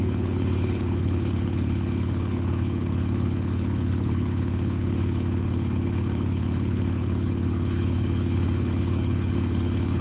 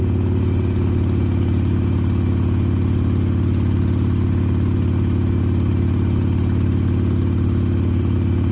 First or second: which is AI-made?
first